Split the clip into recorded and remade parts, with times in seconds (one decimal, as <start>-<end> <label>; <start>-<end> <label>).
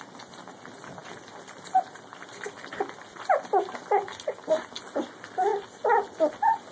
0.0-6.7 recorded